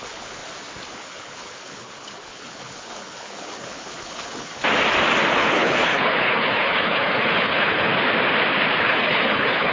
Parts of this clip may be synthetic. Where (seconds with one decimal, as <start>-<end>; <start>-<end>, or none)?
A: 0.0-0.4; 0.9-4.5; 5.3-7.9; 8.8-9.7